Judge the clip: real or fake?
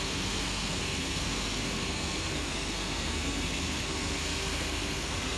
fake